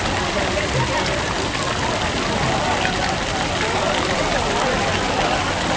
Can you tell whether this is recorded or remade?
recorded